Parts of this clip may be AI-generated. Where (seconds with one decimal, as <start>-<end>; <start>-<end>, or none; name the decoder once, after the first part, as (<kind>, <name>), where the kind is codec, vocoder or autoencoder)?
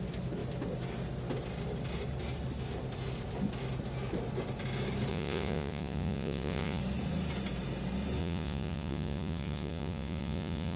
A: 5.1-6.8 (vocoder, Vocos); 8.2-10.8